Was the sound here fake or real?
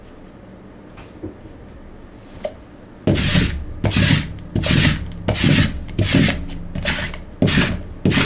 real